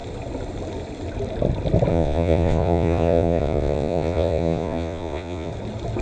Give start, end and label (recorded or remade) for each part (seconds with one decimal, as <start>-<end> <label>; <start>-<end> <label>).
0.0-1.9 recorded; 1.9-5.5 remade; 5.5-6.0 recorded